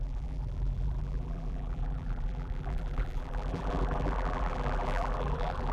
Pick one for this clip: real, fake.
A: fake